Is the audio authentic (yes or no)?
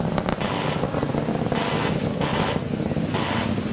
yes